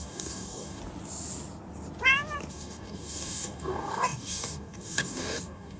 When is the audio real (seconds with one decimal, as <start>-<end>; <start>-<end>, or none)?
0.8-2.5